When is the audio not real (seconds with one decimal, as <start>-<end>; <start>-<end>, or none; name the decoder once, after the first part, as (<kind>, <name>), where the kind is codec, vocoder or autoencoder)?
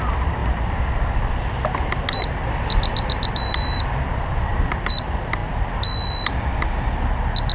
none